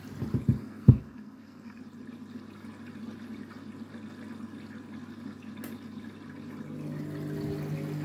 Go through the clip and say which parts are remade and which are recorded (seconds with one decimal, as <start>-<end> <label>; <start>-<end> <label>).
0.0-0.6 recorded; 0.6-1.8 remade; 1.8-8.0 recorded